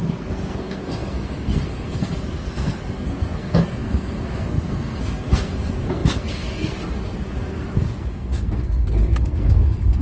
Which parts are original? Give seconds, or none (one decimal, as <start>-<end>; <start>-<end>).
none